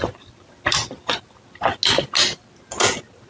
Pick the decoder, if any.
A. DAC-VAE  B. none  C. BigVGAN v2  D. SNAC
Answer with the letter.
B